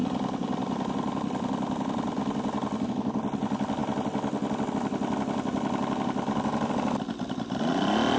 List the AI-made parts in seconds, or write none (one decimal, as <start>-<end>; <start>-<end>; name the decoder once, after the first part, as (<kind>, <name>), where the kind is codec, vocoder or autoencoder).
none